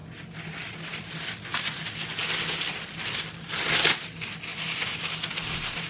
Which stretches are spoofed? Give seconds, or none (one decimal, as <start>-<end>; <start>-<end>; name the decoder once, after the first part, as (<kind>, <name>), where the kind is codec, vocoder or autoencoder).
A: 0.0-1.1 (vocoder, BigVGAN v2); 2.2-4.0; 4.5-5.3